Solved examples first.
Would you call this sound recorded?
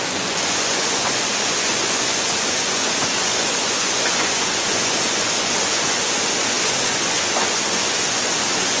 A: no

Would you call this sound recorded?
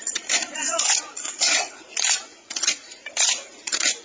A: no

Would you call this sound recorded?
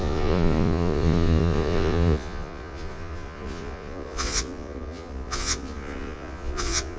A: no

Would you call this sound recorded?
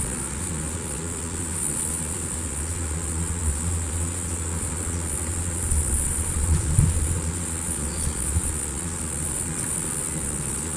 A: no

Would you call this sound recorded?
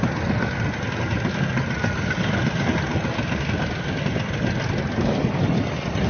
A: yes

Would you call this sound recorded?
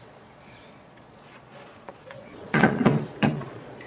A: no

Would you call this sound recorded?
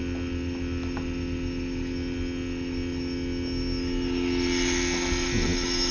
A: yes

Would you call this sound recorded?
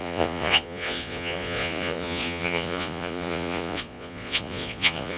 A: no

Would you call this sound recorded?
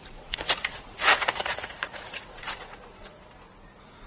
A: no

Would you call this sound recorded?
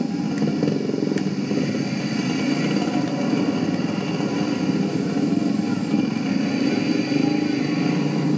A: yes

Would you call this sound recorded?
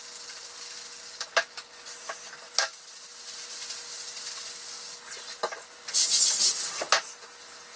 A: yes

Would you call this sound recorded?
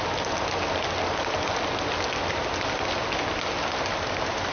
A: yes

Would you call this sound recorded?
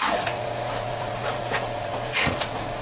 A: no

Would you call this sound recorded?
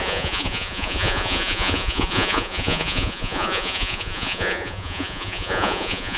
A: no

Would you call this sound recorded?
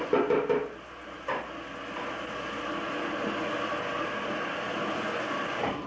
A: yes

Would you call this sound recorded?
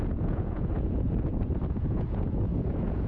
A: no